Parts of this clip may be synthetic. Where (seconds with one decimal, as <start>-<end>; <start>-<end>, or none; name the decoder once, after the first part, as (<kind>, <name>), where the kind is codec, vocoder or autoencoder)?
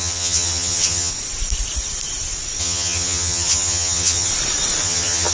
0.0-1.1 (vocoder, HiFi-GAN); 2.6-4.3; 4.8-5.3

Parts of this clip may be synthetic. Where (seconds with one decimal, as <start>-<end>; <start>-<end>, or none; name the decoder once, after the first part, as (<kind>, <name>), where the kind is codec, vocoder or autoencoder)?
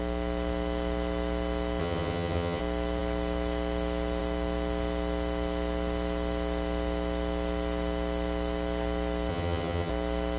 1.8-2.6 (vocoder, HiFi-GAN); 9.3-9.9